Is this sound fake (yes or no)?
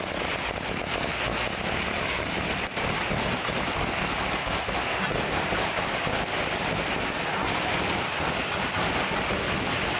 no